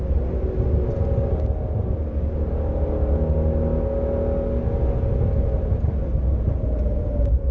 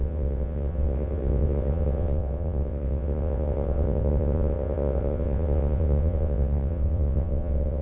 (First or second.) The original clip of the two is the first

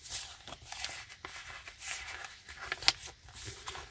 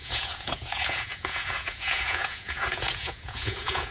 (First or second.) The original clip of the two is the first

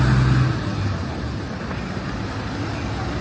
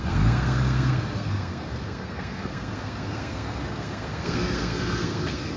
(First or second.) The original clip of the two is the first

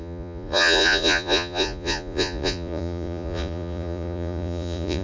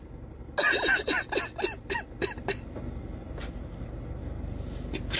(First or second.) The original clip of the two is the second